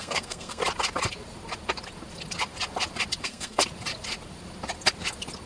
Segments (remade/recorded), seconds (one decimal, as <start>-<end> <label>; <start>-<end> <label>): 0.0-0.6 remade; 0.6-3.2 recorded; 3.2-3.6 remade; 3.6-5.5 recorded